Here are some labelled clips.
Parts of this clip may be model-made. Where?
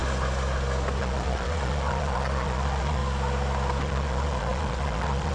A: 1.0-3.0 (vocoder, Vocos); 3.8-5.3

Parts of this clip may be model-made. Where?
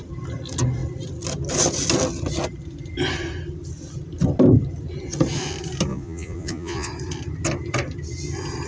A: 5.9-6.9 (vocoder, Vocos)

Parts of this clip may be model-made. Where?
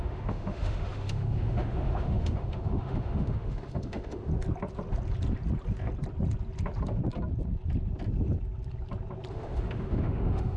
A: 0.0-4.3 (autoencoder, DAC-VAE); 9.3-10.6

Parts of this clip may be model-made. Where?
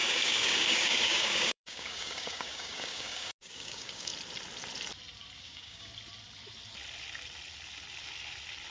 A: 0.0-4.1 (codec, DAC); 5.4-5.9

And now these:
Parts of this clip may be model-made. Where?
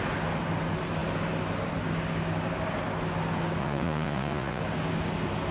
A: 3.6-4.6 (vocoder, Vocos)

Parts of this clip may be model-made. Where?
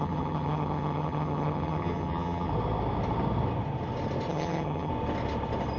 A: 0.0-2.5 (vocoder, HiFi-GAN); 4.3-4.9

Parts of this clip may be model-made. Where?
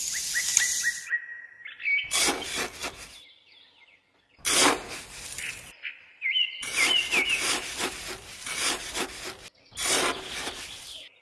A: none